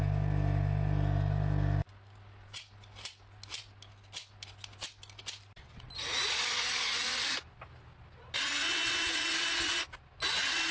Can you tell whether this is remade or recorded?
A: recorded